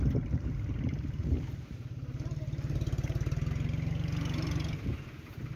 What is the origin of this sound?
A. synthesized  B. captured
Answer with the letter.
A